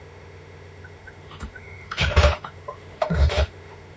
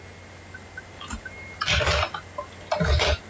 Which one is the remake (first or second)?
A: first